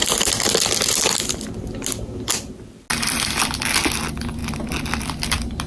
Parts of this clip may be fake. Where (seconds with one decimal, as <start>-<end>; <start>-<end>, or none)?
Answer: none